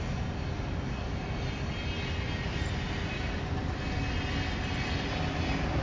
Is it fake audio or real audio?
real